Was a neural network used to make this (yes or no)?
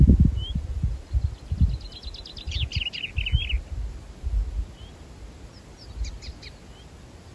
no